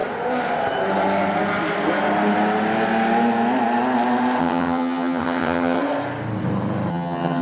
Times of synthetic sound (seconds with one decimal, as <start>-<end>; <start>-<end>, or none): 4.4-5.8; 6.9-7.4